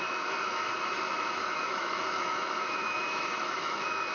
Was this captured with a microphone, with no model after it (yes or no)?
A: no